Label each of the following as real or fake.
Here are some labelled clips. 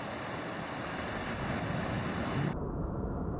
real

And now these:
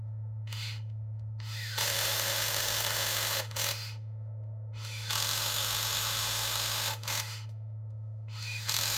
fake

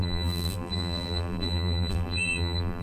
fake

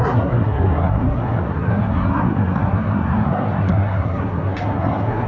fake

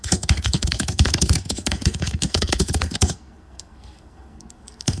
fake